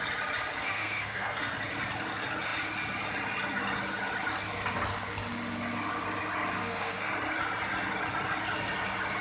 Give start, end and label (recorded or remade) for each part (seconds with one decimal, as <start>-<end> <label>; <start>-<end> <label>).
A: 0.0-0.6 recorded; 0.6-1.5 remade; 1.5-6.6 recorded; 6.6-7.1 remade; 7.1-9.2 recorded